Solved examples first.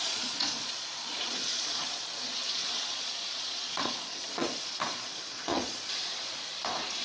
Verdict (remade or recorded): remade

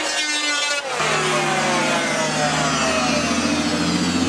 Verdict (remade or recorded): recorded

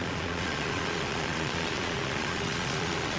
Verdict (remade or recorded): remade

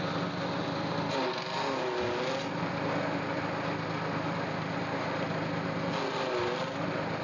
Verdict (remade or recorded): recorded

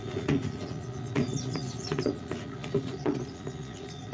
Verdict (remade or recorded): remade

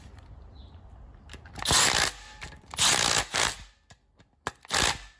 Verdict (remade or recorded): recorded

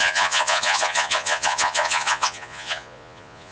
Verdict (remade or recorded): remade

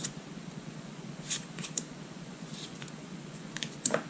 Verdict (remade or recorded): remade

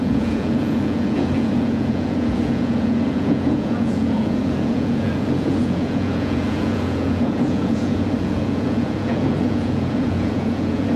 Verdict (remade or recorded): remade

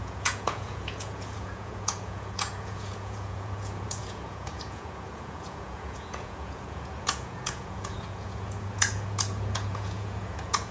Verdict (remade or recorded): remade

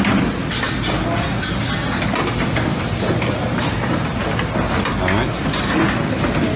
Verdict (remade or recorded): recorded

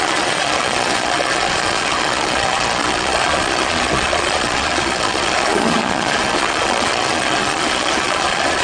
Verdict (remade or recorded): remade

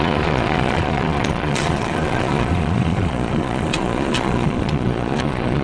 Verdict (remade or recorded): remade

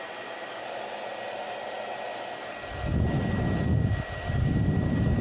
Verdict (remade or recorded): recorded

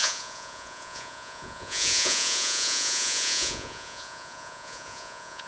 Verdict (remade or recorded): remade